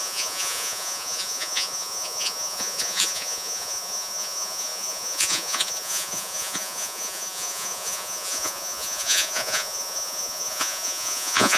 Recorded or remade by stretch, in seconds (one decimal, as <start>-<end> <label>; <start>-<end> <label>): 0.0-11.6 remade